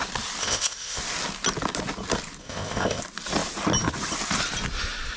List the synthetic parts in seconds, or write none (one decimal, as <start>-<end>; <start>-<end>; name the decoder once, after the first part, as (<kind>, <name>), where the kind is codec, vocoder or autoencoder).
0.4-1.0 (codec, ZipCodec); 2.4-3.0